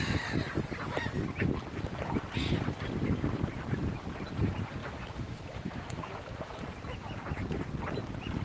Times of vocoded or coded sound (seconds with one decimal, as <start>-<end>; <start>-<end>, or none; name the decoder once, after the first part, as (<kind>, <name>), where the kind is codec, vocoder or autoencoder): 4.8-6.6 (autoencoder, DAC-VAE)